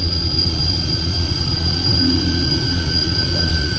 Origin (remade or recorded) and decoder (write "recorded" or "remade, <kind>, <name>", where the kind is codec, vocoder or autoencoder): remade, vocoder, Vocos